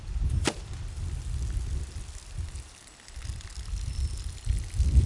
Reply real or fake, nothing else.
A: real